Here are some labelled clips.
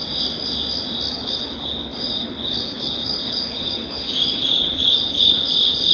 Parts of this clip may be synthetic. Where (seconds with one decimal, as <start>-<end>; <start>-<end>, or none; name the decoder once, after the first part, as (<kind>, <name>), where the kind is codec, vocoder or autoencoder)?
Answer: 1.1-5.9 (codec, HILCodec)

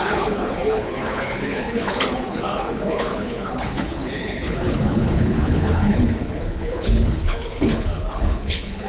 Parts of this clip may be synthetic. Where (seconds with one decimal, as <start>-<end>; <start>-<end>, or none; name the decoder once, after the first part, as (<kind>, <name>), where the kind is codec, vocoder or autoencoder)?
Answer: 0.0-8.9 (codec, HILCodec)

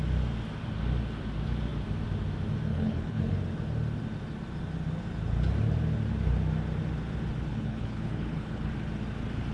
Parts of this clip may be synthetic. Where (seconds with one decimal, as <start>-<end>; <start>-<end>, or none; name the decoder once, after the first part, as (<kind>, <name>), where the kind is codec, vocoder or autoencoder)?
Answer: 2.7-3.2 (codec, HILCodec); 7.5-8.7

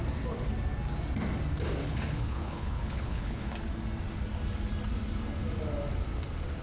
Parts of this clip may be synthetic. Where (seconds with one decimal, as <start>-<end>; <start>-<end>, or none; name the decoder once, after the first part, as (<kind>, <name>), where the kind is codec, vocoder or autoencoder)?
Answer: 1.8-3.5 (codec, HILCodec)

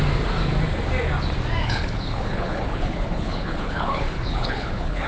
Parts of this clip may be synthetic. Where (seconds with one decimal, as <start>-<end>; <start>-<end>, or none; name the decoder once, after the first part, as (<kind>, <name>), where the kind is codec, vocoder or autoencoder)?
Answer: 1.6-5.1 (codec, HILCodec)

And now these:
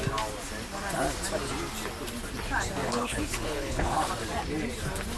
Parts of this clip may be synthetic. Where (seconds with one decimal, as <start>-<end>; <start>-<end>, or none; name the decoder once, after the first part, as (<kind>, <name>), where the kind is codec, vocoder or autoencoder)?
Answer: 2.8-4.1 (codec, HILCodec)

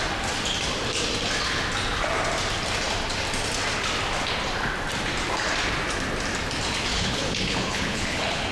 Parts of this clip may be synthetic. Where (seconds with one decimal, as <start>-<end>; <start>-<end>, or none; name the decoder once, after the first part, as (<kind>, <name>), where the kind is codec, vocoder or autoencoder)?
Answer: 6.9-8.5 (codec, HILCodec)

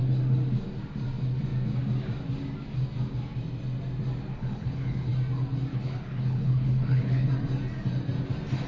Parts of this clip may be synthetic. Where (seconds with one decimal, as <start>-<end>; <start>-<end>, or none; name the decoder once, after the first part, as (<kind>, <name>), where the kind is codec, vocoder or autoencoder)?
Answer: 4.3-5.1 (codec, HILCodec); 5.7-7.3